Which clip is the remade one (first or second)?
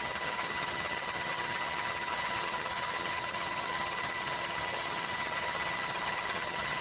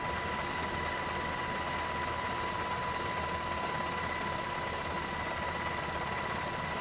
first